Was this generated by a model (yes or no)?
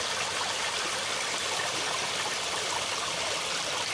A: no